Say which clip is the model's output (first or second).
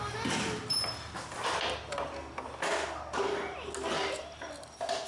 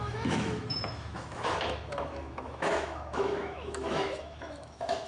second